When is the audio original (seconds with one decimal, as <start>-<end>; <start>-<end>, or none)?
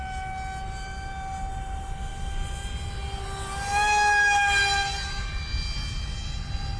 0.0-6.8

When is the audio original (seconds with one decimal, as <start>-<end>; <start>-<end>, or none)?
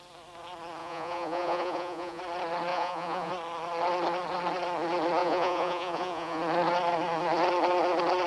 0.0-0.8; 2.2-2.7; 3.3-5.2; 6.4-8.3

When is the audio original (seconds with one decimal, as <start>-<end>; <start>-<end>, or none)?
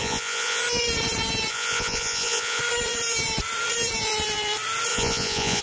0.6-1.5; 2.6-4.9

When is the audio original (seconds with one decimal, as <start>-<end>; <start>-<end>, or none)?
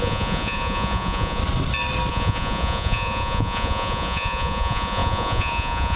1.4-2.1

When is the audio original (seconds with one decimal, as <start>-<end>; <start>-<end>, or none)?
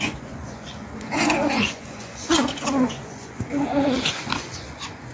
none